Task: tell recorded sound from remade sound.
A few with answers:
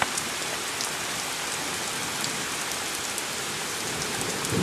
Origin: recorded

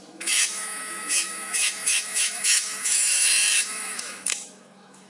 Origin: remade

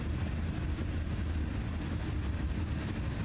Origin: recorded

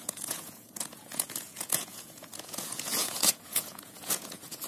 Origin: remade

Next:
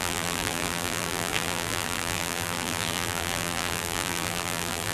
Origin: remade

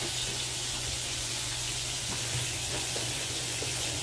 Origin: remade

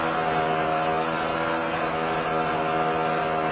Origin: recorded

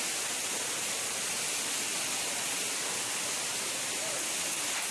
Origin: recorded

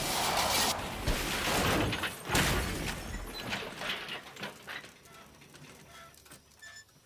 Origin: recorded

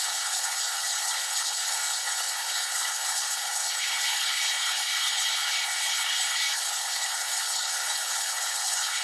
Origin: remade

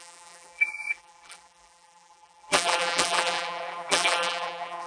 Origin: remade